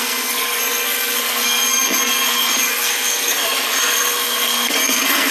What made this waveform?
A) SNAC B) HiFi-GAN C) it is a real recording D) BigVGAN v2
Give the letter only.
A